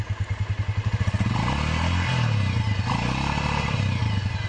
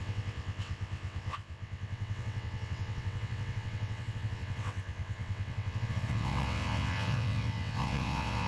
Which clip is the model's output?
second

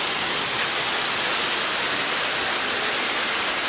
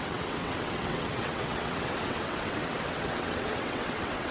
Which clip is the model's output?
second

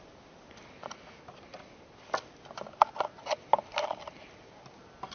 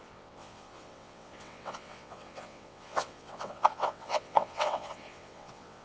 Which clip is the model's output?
second